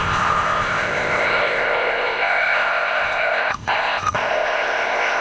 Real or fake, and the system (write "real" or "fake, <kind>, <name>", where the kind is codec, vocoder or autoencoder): fake, codec, ZipCodec